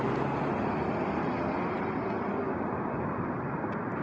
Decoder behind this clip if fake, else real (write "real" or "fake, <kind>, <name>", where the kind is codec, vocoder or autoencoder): real